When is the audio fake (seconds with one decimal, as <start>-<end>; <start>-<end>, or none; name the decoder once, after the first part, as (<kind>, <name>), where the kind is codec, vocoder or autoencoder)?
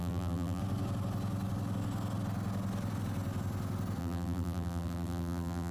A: 0.0-0.6 (vocoder, BigVGAN v2); 4.0-5.7